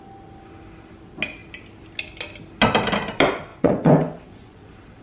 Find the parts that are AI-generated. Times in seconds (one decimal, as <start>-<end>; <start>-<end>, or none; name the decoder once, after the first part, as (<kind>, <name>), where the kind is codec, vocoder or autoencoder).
3.5-4.6 (vocoder, Vocos)